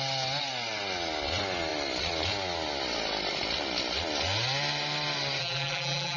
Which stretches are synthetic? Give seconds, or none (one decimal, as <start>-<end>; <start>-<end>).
5.4-6.2